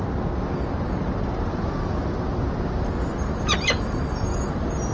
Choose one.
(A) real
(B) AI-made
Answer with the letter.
A